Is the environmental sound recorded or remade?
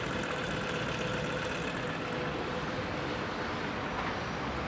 recorded